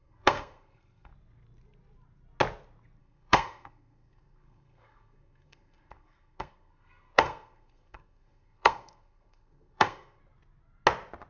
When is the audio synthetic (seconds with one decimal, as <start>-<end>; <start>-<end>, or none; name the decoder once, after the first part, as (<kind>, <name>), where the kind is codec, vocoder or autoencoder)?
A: 0.0-1.1 (codec, SNAC); 3.0-10.2